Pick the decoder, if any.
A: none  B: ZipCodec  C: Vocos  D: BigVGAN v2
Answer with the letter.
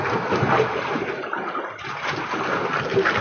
A